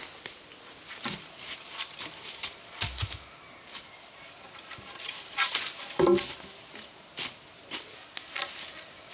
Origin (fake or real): real